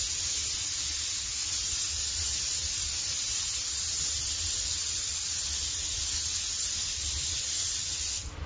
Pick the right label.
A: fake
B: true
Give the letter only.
B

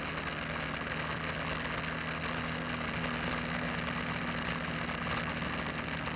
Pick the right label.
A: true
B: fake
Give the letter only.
A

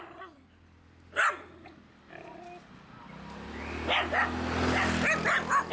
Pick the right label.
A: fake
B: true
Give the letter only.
B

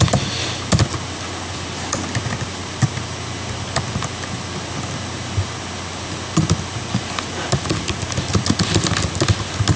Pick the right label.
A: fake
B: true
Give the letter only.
B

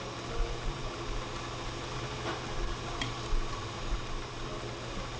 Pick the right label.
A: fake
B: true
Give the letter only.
B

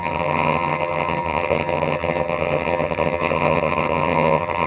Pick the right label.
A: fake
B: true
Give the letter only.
A